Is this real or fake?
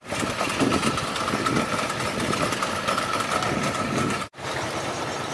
real